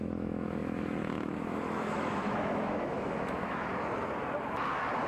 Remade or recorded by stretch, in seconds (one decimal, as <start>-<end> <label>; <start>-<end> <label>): 0.0-3.7 remade; 3.7-5.1 recorded